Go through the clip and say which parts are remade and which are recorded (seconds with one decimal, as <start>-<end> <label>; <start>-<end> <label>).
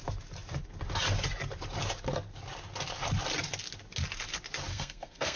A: 0.0-4.7 recorded; 4.7-5.4 remade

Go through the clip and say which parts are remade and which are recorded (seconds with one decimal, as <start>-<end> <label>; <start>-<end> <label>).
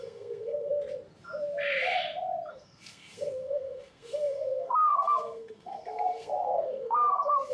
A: 0.0-0.7 remade; 0.7-2.5 recorded; 2.5-7.5 remade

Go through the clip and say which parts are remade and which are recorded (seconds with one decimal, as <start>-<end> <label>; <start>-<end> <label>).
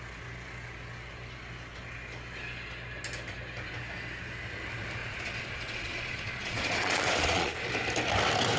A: 0.0-5.0 recorded; 5.0-7.7 remade; 7.7-8.6 recorded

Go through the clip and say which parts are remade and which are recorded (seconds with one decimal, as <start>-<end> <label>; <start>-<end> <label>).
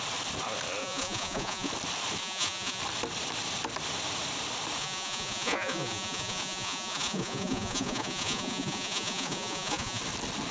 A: 0.0-0.8 recorded; 0.8-1.7 remade; 1.7-2.2 recorded; 2.2-2.8 remade; 2.8-4.8 recorded; 4.8-10.0 remade; 10.0-10.5 recorded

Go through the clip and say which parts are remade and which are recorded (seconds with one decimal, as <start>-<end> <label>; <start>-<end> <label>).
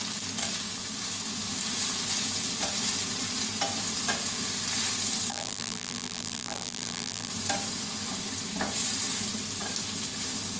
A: 0.0-5.3 recorded; 5.3-7.3 remade; 7.3-10.6 recorded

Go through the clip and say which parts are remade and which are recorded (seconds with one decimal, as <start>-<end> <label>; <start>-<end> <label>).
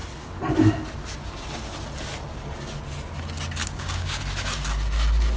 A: 0.0-3.6 recorded; 3.6-4.2 remade; 4.2-5.4 recorded